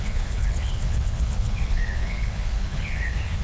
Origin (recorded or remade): remade